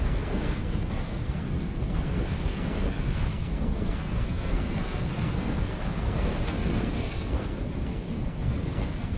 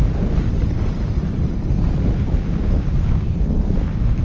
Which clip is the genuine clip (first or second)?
second